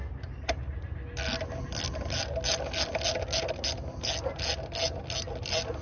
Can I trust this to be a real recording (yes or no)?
yes